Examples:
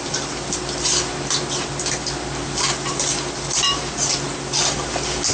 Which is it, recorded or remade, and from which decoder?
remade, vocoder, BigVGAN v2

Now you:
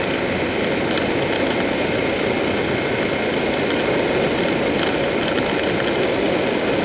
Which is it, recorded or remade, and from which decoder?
recorded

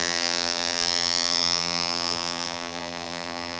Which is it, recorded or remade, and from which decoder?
remade, vocoder, BigVGAN v2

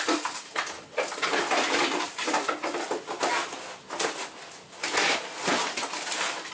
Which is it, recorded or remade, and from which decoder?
recorded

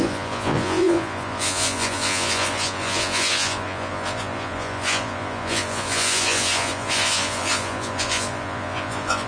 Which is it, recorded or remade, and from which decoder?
remade, vocoder, Vocos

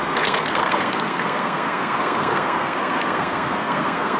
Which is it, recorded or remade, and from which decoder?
remade, codec, SNAC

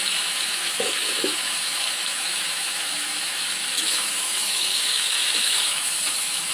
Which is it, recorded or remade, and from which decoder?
remade, autoencoder, DAC-VAE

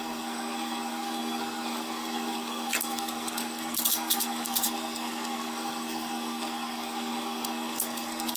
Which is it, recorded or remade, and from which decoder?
remade, codec, SNAC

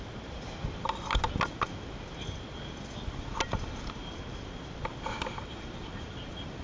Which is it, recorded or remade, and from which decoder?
recorded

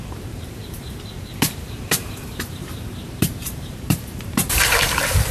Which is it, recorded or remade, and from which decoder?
remade, vocoder, BigVGAN v2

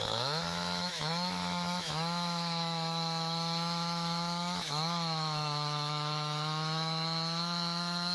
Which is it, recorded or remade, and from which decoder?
remade, autoencoder, DAC-VAE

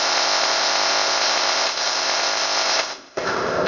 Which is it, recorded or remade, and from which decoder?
remade, codec, ZipCodec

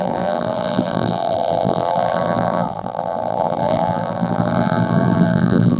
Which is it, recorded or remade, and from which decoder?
remade, vocoder, BigVGAN v2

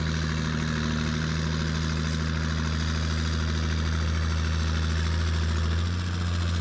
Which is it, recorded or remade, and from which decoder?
recorded